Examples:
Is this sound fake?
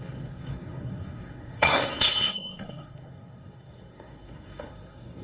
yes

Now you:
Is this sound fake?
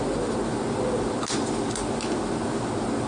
no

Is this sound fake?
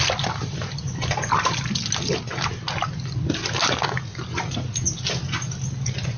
no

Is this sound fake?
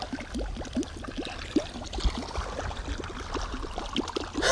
no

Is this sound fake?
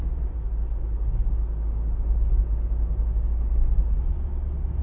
no